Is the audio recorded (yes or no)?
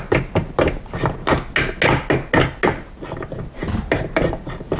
yes